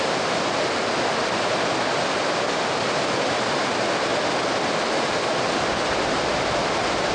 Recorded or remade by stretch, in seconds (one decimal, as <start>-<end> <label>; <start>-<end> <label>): 0.0-7.1 recorded